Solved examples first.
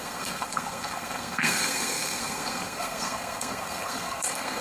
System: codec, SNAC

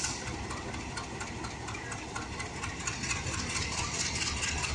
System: none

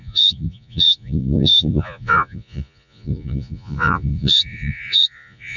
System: vocoder, Vocos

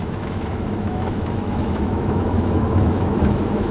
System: autoencoder, DAC-VAE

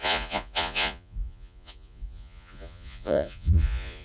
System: vocoder, Vocos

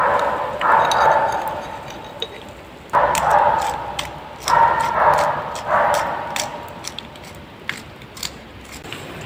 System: none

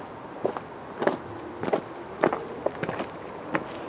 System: none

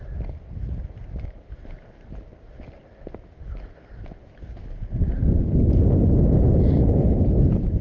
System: none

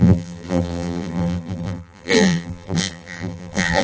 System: vocoder, BigVGAN v2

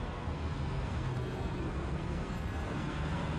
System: codec, SNAC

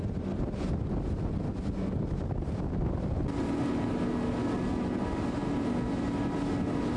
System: none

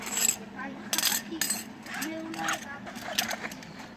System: none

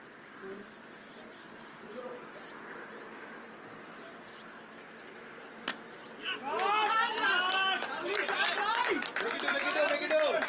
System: none